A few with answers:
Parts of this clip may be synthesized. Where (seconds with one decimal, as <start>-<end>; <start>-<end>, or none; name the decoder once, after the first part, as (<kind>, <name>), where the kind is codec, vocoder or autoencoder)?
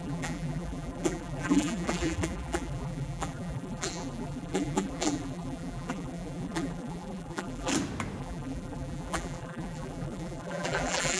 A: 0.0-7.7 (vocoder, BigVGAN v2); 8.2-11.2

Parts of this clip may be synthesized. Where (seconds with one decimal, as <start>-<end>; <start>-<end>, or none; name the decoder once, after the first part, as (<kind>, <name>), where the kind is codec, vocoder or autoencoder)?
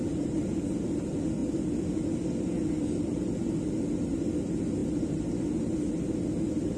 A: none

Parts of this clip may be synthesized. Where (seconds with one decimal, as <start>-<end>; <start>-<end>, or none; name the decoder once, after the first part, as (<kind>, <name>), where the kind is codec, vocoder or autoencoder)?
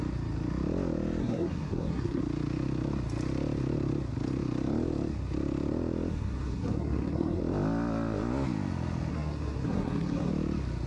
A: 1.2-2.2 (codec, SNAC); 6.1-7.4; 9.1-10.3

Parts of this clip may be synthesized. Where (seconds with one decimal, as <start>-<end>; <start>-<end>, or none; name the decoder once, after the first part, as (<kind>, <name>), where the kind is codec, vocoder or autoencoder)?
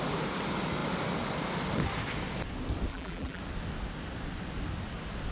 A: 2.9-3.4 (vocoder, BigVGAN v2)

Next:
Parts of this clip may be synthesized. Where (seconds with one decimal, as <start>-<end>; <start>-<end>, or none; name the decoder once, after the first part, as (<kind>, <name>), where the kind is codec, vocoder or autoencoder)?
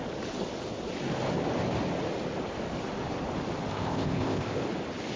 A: 3.7-4.6 (codec, ZipCodec)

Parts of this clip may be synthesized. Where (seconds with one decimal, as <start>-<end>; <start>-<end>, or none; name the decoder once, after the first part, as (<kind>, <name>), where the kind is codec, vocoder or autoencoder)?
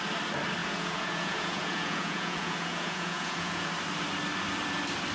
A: 0.6-3.7 (vocoder, Vocos)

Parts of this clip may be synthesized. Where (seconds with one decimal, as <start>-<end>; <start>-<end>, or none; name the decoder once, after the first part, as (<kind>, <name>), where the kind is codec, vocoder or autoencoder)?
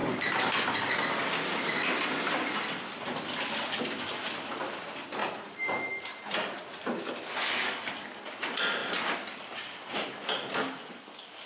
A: 0.0-0.9 (vocoder, BigVGAN v2); 5.2-6.6